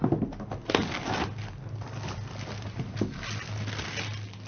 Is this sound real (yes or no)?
yes